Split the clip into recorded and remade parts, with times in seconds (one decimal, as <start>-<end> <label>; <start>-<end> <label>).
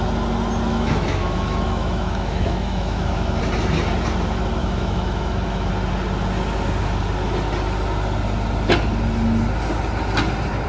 0.0-0.7 recorded; 0.7-3.4 remade; 3.4-4.6 recorded; 4.6-5.7 remade; 5.7-10.7 recorded